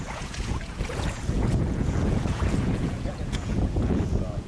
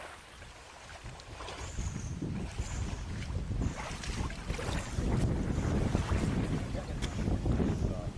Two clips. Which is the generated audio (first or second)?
first